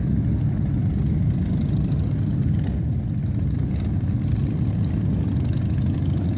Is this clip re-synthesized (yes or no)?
no